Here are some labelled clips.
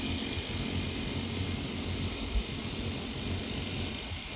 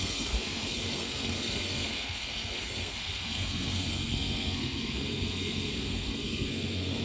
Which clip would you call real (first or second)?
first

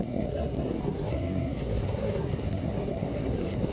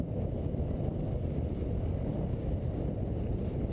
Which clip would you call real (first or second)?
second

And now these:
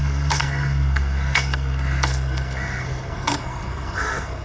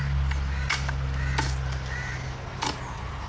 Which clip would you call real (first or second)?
second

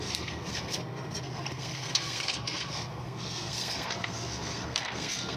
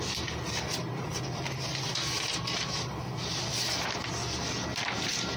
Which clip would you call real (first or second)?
second